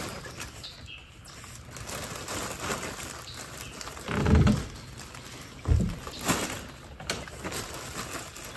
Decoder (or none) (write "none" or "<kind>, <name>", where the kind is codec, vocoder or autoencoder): none